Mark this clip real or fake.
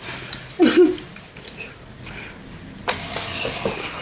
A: real